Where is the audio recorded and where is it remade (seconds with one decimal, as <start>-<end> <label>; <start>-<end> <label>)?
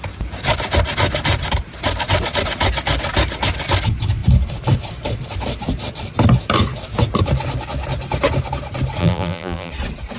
0.0-9.0 recorded; 9.0-9.7 remade; 9.7-10.2 recorded